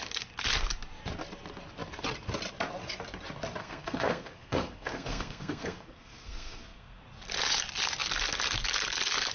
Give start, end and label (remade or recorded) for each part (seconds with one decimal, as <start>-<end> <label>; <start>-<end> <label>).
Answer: 0.0-3.6 recorded; 3.6-7.0 remade; 7.0-9.3 recorded